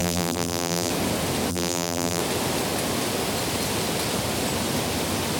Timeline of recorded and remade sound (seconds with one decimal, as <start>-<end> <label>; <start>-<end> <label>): 0.0-0.9 remade; 0.9-1.5 recorded; 1.5-2.2 remade; 2.2-5.4 recorded